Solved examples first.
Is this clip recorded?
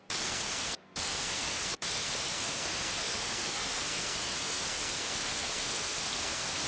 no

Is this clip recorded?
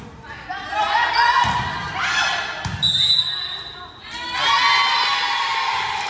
yes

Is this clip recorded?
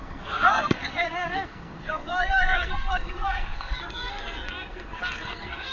no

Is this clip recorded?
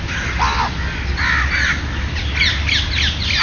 yes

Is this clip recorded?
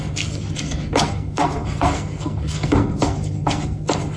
no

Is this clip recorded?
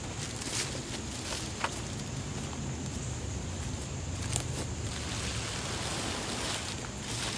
yes